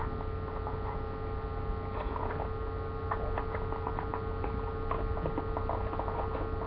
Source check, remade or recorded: recorded